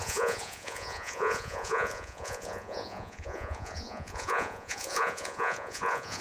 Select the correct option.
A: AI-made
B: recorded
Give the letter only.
A